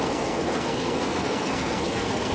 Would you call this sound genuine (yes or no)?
no